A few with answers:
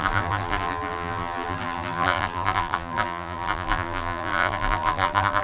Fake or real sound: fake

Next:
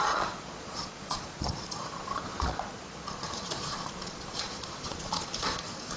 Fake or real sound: fake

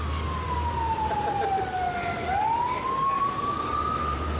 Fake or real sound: real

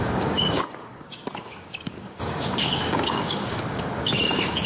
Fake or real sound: fake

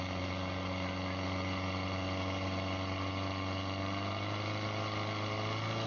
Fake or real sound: real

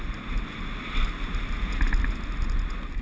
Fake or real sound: real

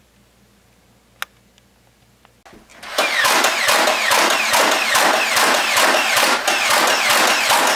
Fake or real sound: real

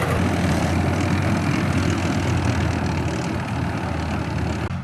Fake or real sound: real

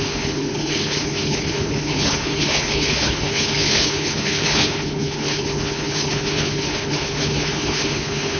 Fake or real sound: fake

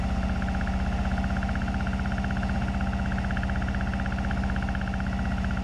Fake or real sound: real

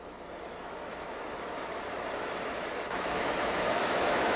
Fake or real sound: fake